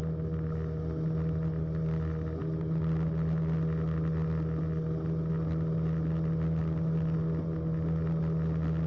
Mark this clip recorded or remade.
recorded